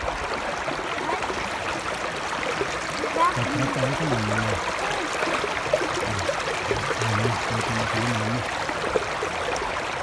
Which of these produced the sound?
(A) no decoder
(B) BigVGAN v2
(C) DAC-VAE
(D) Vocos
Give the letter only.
A